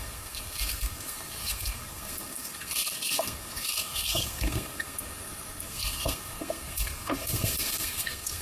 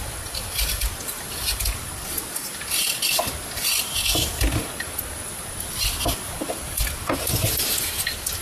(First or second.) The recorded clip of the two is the second